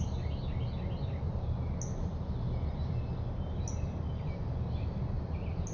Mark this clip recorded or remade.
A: recorded